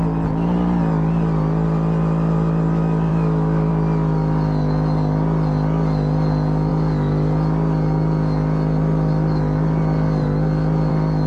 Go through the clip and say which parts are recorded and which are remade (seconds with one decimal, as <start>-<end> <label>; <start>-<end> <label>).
0.0-3.1 recorded; 3.1-3.7 remade; 3.7-11.3 recorded